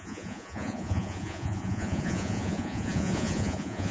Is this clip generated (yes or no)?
yes